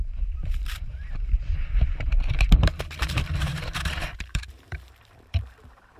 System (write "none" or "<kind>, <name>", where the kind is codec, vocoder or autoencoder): vocoder, BigVGAN v2